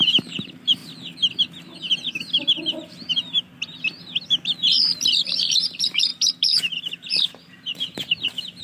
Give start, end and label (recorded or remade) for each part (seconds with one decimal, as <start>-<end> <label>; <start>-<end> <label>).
0.0-0.8 remade; 0.8-2.7 recorded; 2.7-3.5 remade; 3.5-4.6 recorded; 4.6-8.6 remade